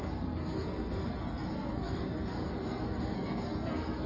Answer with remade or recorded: remade